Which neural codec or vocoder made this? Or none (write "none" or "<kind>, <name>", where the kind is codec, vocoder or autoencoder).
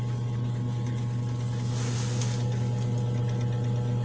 none